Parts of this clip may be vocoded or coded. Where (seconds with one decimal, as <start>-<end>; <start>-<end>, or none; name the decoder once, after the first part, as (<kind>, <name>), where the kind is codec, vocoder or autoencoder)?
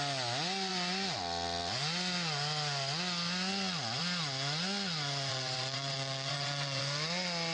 5.3-6.8 (vocoder, WaveNeXt)